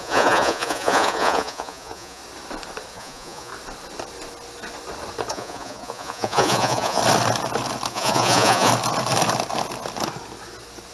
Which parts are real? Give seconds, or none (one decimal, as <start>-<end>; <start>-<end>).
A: 2.2-2.9; 3.5-5.3; 7.0-7.9; 8.7-10.9